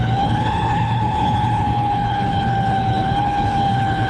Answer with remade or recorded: remade